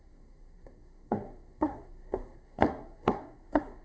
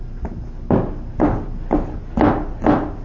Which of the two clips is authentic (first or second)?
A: second